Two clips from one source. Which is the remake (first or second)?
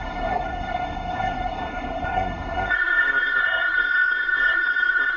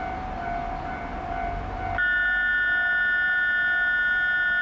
first